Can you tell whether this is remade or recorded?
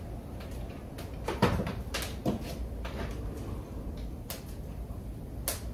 recorded